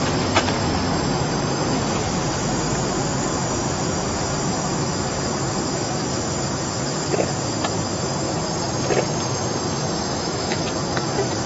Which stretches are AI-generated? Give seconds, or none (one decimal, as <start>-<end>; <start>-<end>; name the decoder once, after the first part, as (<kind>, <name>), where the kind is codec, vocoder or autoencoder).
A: 10.1-10.6 (autoencoder, DAC-VAE)